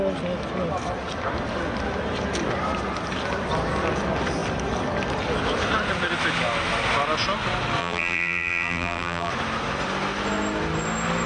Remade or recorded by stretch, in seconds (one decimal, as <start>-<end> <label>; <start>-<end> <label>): 0.0-7.8 recorded; 7.8-9.3 remade; 9.3-11.3 recorded